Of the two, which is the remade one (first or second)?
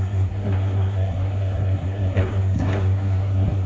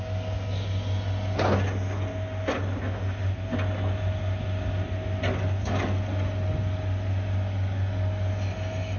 first